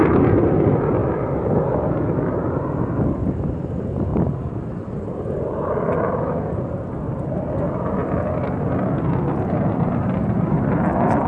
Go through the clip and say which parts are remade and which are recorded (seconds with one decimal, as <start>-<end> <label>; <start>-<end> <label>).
0.0-1.0 remade; 1.0-2.9 recorded; 2.9-4.1 remade; 4.1-7.6 recorded; 7.6-8.0 remade; 8.0-9.7 recorded; 9.7-11.3 remade